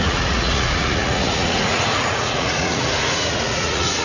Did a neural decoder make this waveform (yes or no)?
yes